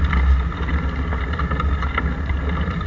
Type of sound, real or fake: real